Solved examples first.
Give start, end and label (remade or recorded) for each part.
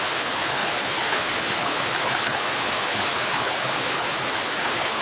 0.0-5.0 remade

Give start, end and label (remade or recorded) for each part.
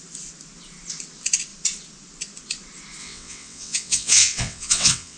0.0-3.0 recorded; 3.0-5.2 remade